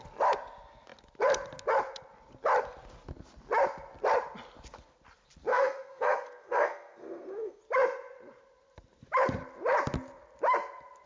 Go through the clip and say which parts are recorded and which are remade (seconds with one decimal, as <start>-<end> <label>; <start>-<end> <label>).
0.0-5.5 recorded; 5.5-7.6 remade; 7.6-11.1 recorded